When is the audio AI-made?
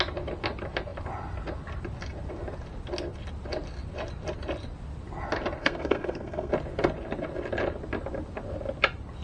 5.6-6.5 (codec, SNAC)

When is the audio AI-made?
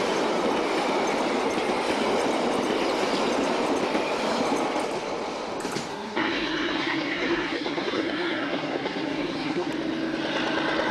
5.9-9.7 (codec, SNAC)